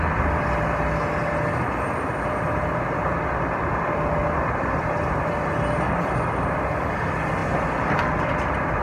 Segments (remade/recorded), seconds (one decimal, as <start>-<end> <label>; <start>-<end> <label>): 0.0-8.8 recorded